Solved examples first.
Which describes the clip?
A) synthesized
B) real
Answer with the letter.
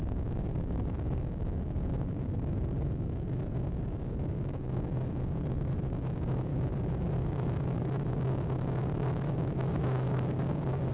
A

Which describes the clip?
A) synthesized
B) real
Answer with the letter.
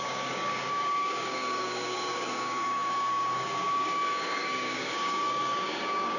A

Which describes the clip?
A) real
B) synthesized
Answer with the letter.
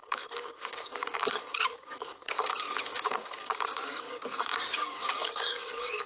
B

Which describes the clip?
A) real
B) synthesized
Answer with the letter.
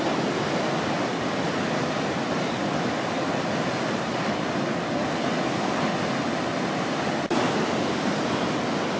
A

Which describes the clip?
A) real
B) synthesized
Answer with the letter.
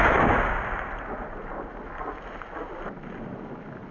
A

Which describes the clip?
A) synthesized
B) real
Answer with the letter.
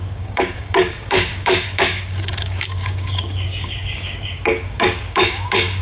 A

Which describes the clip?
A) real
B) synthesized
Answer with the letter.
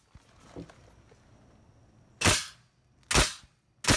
A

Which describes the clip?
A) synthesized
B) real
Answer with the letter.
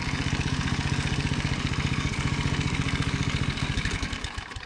A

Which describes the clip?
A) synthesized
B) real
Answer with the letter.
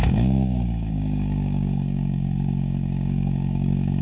A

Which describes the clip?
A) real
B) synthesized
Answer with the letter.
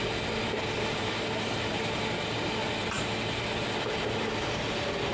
A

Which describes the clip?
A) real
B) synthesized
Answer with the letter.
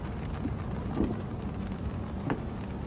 A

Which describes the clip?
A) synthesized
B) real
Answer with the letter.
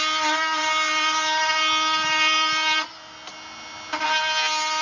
B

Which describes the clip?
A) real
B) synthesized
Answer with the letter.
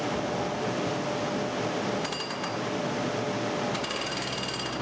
A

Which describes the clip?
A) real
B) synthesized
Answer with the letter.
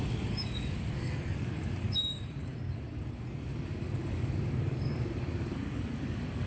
B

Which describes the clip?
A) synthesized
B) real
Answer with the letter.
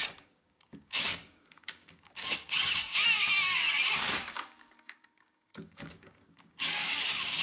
A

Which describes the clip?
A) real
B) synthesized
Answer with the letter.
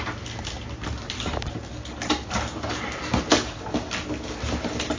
A